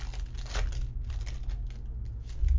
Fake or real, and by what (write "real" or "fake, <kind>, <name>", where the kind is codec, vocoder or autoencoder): real